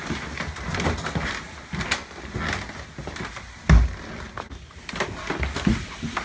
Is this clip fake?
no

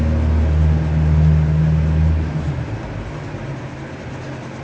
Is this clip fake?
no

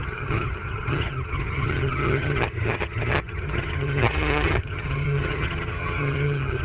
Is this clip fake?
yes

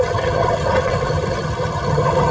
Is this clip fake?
yes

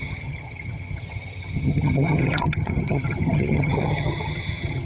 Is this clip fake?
yes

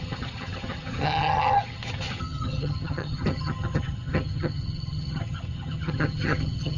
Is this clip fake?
yes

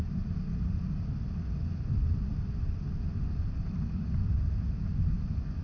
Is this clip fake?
no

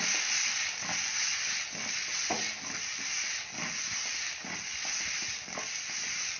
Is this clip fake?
no